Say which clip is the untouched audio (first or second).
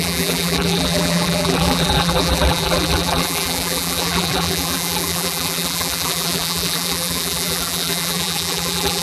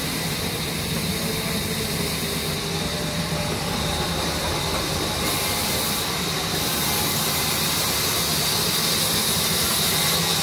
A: second